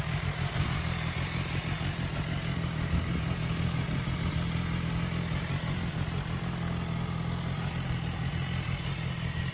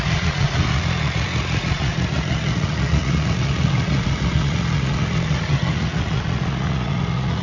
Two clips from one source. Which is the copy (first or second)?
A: second